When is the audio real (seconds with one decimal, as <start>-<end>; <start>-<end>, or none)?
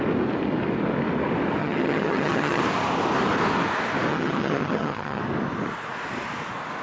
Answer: 0.0-1.6; 2.6-4.1; 5.2-6.8